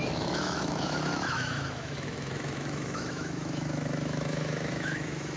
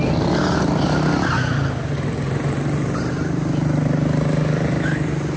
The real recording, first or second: second